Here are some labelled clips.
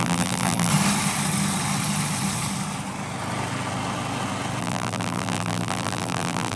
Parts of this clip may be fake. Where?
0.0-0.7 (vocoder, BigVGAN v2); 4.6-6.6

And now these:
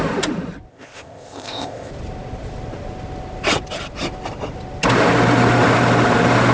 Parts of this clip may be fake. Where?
0.7-1.9 (codec, ZipCodec)

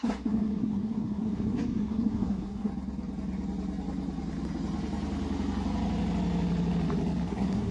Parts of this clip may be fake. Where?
0.0-2.7 (codec, SNAC); 7.3-7.7